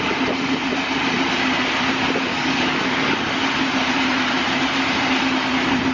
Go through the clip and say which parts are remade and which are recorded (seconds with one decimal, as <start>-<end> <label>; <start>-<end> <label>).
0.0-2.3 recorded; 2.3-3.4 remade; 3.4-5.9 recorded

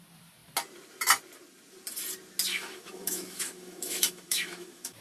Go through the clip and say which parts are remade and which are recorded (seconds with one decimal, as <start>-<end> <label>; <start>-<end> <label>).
0.0-2.5 recorded; 2.5-5.0 remade

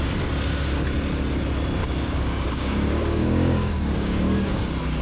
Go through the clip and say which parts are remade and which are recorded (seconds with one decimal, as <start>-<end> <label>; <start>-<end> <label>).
0.0-1.8 recorded; 1.8-4.6 remade; 4.6-5.0 recorded

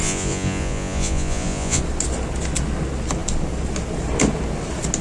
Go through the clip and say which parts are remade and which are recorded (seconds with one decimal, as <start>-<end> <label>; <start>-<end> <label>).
0.0-1.8 remade; 1.8-5.0 recorded

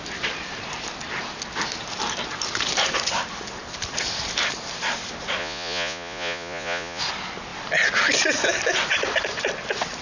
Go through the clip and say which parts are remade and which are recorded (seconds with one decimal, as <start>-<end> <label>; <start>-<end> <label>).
0.0-5.4 recorded; 5.4-7.0 remade; 7.0-10.0 recorded

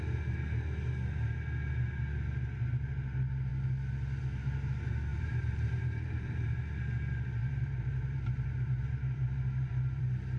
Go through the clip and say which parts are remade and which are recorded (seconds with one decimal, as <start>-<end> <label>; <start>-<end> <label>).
0.0-5.1 recorded; 5.1-6.6 remade; 6.6-7.4 recorded; 7.4-10.0 remade; 10.0-10.4 recorded

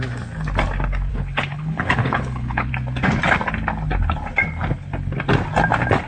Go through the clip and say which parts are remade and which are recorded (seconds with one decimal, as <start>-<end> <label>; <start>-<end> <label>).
0.0-1.1 recorded; 1.1-2.7 remade; 2.7-6.1 recorded